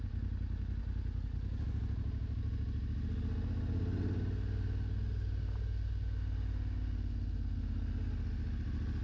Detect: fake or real real